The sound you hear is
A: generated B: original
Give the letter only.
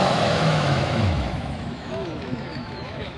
A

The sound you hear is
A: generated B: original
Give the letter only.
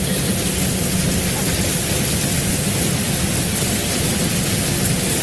B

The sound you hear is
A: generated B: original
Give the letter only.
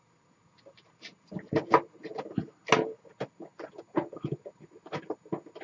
B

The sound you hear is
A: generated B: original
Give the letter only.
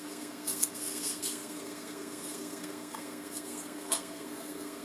A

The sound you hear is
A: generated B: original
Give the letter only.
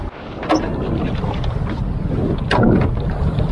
B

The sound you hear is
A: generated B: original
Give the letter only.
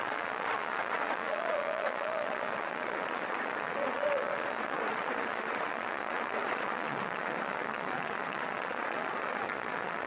A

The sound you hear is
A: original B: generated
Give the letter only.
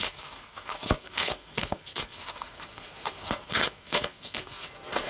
B